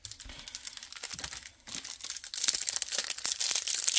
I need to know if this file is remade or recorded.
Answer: recorded